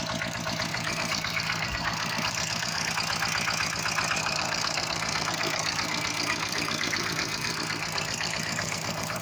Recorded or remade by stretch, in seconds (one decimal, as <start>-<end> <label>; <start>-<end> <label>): 0.0-0.7 recorded; 0.7-2.9 remade; 2.9-4.2 recorded; 4.2-9.2 remade